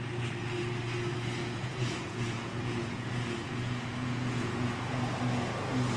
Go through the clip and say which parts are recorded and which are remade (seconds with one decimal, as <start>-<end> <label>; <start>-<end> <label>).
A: 0.0-1.4 recorded; 1.4-5.0 remade; 5.0-6.0 recorded